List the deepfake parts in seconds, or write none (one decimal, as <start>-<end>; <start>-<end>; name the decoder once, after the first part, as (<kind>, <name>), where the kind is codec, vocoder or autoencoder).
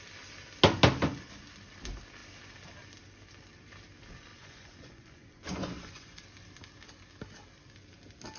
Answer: 4.3-6.2 (vocoder, Vocos)